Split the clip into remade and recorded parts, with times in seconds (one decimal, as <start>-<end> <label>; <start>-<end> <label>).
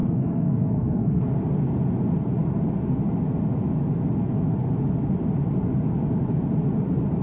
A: 0.0-1.2 remade; 1.2-7.2 recorded